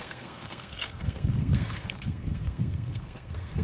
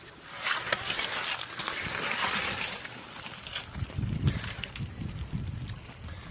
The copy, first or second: first